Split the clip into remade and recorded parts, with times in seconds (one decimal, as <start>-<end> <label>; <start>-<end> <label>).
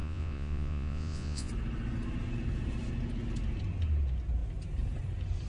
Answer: 0.0-1.5 remade; 1.5-5.5 recorded